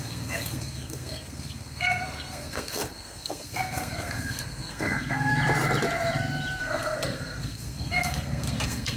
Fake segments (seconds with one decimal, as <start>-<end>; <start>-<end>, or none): 0.0-5.3; 6.6-9.0